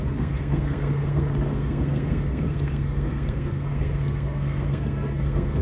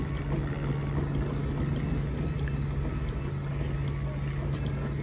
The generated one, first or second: first